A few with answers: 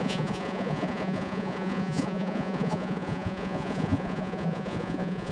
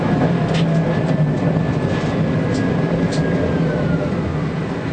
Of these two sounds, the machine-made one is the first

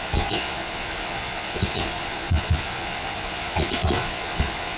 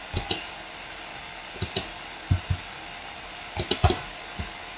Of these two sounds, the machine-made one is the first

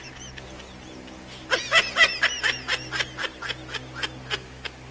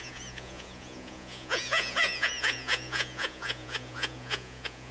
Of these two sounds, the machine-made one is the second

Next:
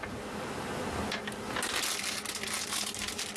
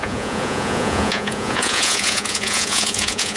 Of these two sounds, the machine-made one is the second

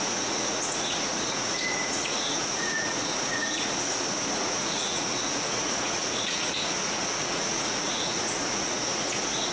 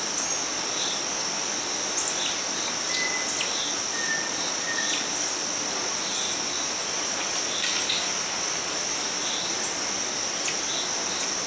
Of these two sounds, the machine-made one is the first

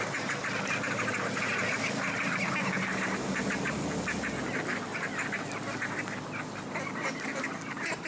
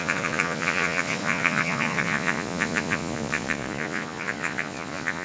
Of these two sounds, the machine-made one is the second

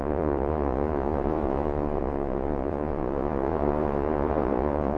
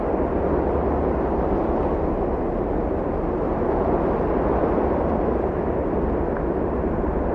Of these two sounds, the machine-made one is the first